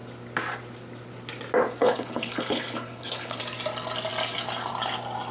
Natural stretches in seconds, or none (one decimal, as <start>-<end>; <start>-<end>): 0.0-1.8; 3.4-5.3